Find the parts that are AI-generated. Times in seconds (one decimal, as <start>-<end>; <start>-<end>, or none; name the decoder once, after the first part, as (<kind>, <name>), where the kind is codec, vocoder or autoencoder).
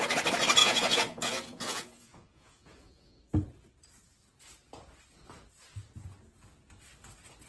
0.6-3.2 (vocoder, Vocos)